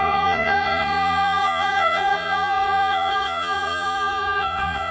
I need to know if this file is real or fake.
fake